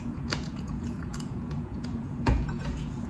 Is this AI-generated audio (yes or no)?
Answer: yes